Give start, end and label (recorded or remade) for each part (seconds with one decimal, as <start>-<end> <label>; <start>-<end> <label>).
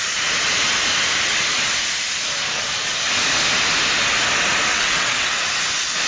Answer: 0.0-4.7 recorded; 4.7-5.4 remade; 5.4-6.1 recorded